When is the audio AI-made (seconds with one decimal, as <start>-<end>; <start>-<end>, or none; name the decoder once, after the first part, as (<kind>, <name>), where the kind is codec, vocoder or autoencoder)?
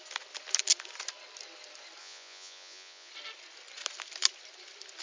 2.0-3.1 (vocoder, Vocos)